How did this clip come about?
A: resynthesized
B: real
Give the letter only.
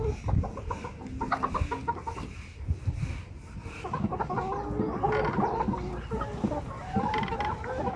B